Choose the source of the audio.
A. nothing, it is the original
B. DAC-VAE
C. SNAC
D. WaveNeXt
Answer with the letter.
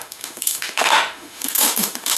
B